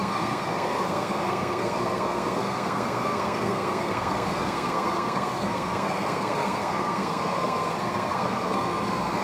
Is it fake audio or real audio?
fake